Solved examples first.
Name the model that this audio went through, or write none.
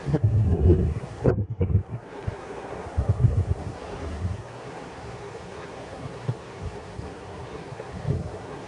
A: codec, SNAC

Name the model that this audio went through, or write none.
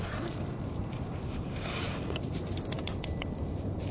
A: none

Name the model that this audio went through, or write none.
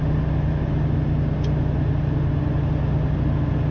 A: none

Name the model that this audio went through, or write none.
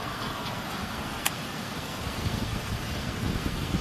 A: codec, SNAC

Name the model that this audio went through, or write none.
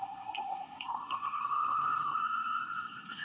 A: codec, SNAC